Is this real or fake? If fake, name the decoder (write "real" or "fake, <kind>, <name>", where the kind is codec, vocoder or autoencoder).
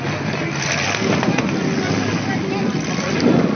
real